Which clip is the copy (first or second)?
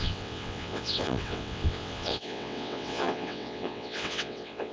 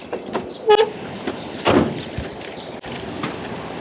first